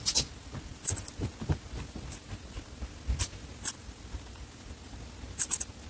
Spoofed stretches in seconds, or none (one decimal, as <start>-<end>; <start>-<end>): none